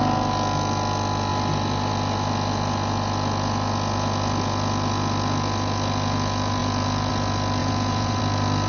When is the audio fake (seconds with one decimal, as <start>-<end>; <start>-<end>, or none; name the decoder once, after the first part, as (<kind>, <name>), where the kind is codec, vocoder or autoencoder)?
7.6-8.2 (vocoder, Vocos)